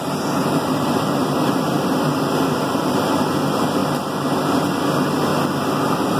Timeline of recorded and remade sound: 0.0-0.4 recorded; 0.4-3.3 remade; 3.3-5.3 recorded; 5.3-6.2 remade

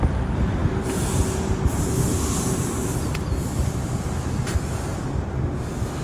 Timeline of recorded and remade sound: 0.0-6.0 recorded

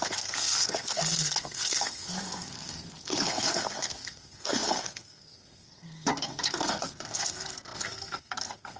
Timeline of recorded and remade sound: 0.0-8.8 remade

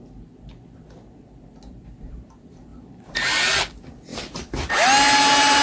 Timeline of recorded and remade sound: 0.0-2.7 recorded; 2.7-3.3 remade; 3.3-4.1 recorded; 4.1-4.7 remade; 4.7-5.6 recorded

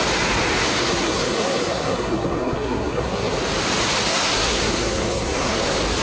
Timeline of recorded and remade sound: 0.0-0.8 recorded; 0.8-3.3 remade; 3.3-4.1 recorded; 4.1-5.6 remade; 5.6-6.0 recorded

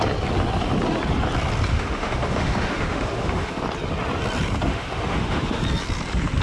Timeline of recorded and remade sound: 0.0-1.7 recorded; 1.7-3.6 remade; 3.6-4.7 recorded; 4.7-5.6 remade; 5.6-6.4 recorded

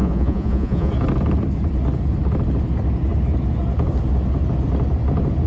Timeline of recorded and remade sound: 0.0-0.9 remade; 0.9-5.5 recorded